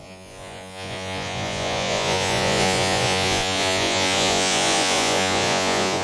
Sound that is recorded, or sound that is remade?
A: remade